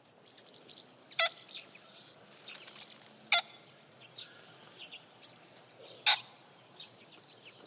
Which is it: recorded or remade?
recorded